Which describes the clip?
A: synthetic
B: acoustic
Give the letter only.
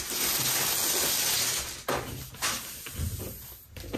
B